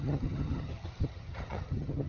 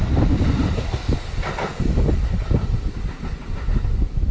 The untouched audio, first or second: second